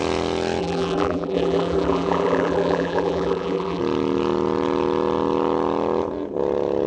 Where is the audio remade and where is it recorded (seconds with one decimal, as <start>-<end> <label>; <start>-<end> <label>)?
0.0-0.6 recorded; 0.6-3.8 remade; 3.8-6.9 recorded